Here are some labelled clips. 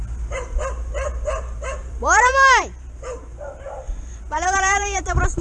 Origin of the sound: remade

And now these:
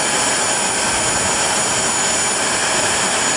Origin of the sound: recorded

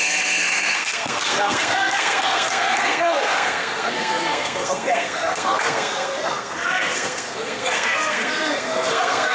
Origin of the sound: remade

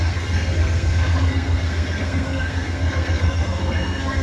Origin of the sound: remade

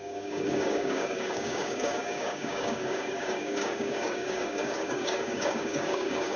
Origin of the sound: remade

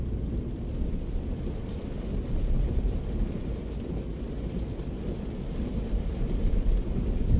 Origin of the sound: recorded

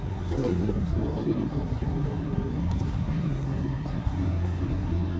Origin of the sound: remade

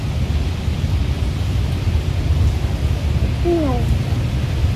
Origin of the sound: recorded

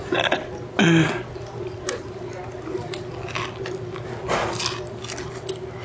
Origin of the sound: recorded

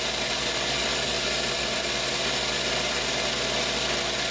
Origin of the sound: recorded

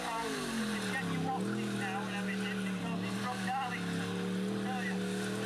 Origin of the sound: recorded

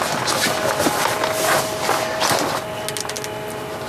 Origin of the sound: recorded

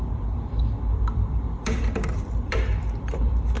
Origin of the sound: remade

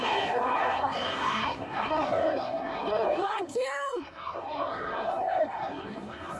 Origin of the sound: remade